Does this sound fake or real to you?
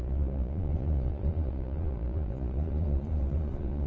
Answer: fake